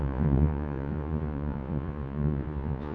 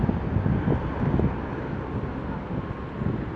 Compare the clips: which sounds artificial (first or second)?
first